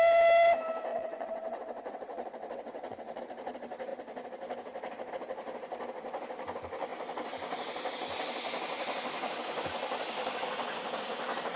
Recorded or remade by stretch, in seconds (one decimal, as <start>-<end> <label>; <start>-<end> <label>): 0.0-0.9 recorded; 0.9-3.2 remade; 3.2-11.6 recorded